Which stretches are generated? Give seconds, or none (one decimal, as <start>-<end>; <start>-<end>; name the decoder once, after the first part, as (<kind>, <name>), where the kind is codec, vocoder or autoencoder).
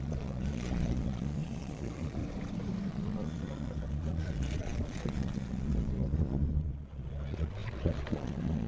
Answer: 0.0-2.2 (vocoder, Vocos); 2.9-8.7